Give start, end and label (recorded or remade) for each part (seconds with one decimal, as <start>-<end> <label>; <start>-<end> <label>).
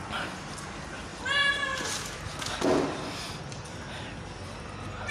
0.0-5.1 recorded